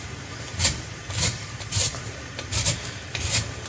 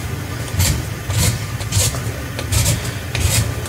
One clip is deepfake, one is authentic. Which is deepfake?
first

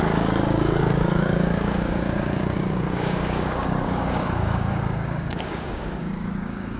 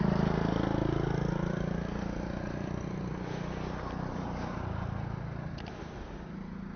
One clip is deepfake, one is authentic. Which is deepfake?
first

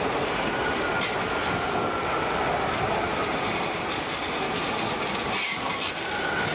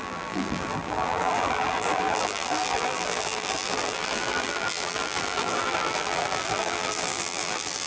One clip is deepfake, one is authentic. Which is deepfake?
second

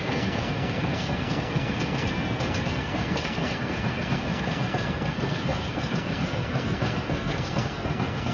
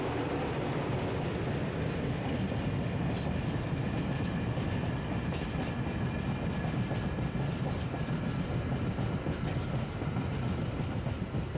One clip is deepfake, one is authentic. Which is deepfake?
first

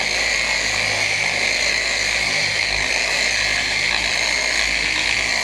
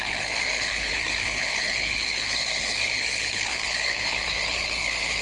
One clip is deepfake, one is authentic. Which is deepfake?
second